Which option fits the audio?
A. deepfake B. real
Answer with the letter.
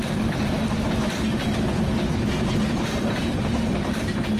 B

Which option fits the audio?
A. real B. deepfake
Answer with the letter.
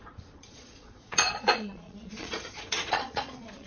B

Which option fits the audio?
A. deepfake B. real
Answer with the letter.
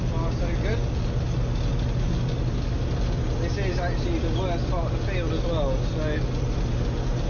B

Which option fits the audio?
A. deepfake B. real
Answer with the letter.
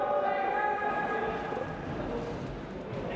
B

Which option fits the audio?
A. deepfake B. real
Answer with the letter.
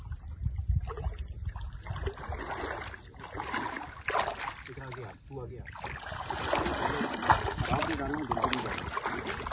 B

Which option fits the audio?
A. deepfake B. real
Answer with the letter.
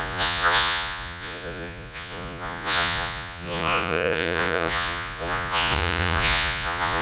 A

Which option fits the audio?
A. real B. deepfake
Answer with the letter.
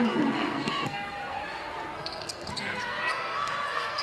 B